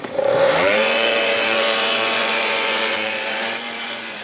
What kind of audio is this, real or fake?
fake